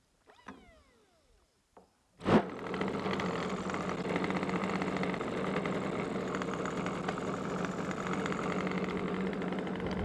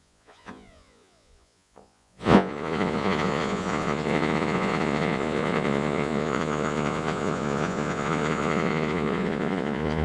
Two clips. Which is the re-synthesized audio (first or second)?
second